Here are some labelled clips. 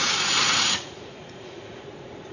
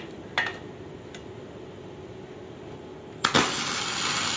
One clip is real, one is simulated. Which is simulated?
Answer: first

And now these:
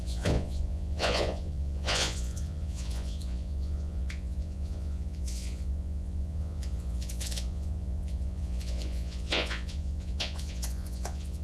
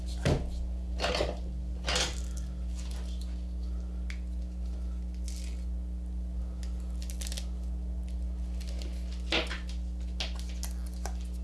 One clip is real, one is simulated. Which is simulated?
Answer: first